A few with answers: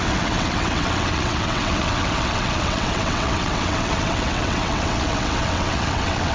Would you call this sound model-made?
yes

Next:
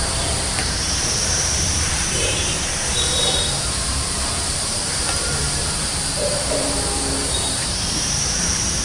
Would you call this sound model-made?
yes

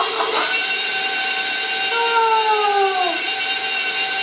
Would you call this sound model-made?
no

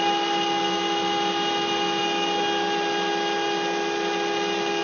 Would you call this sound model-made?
no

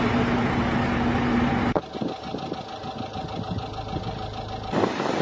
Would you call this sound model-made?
no